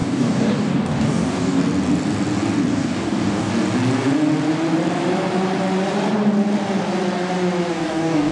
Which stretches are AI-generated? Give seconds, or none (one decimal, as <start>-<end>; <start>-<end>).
0.0-1.6; 2.7-3.5; 7.7-8.3